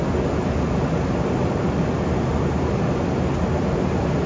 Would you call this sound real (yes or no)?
yes